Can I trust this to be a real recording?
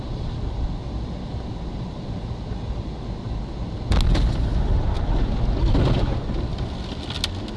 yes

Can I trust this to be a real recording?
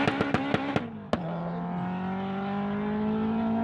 yes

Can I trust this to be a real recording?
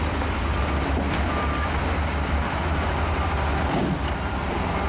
no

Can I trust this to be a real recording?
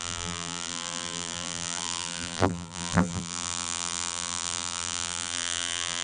no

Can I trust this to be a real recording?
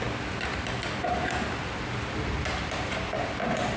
no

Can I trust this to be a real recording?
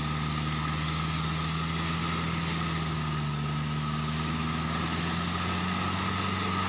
yes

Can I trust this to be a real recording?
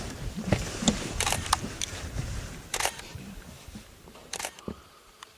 no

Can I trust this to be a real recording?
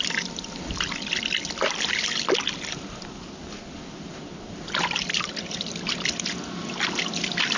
yes